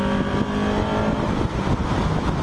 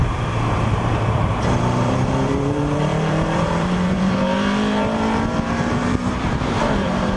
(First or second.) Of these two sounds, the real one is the first